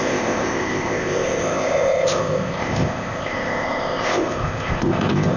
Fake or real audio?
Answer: fake